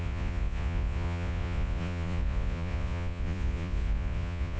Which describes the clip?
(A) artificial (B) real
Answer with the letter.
A